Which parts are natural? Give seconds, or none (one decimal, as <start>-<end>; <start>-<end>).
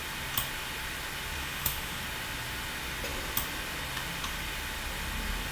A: 0.0-1.4; 2.0-5.5